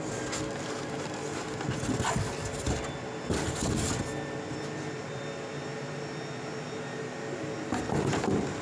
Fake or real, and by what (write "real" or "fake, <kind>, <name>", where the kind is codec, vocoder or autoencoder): real